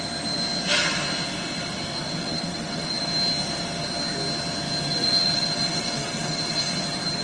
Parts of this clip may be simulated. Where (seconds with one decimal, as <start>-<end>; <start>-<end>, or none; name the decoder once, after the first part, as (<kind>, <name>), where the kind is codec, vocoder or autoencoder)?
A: 2.2-3.0 (vocoder, WaveNeXt); 5.0-6.6